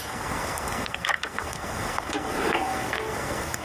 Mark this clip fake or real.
fake